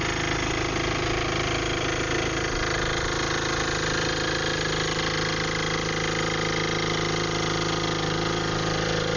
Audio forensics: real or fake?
real